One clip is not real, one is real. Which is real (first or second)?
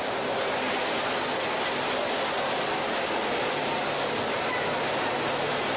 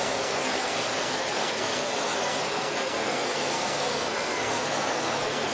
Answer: first